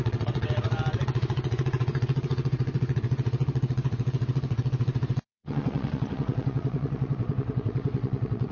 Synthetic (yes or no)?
yes